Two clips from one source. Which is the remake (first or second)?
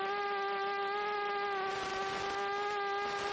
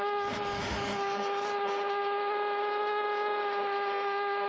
second